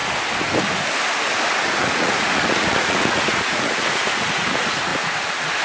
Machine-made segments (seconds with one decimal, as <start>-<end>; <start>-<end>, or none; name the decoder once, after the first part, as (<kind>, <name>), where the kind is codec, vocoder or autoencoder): 1.5-4.9 (vocoder, Vocos)